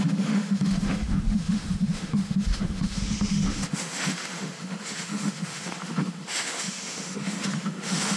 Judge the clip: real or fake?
fake